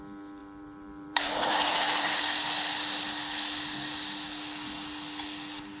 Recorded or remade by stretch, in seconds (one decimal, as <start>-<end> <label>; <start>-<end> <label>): 0.0-0.4 recorded; 0.4-2.2 remade; 2.2-5.8 recorded